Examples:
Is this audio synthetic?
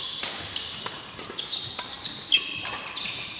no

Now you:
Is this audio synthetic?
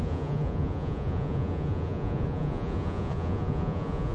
yes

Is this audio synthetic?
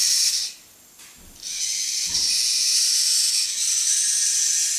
no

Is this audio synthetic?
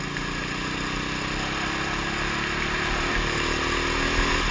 no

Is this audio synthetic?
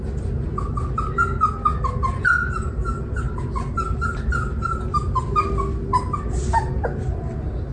no